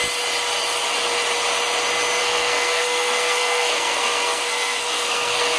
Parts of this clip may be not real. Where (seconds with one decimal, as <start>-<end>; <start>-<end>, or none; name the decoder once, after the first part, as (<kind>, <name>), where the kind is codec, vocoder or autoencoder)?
2.2-5.6 (codec, SNAC)